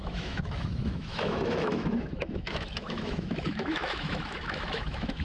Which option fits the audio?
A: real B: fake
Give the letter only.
B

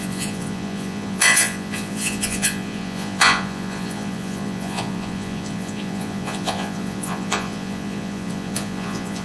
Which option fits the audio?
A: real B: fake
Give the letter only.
B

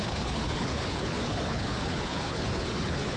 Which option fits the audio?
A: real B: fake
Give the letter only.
B